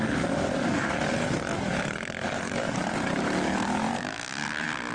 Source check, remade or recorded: remade